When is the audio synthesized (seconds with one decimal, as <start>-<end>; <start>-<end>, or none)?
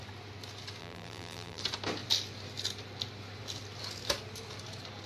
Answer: 0.8-1.6